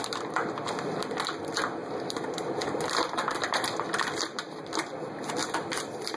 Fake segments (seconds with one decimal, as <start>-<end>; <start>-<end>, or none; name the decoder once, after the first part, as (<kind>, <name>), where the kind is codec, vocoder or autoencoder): 1.8-4.6 (vocoder, BigVGAN v2); 5.4-6.2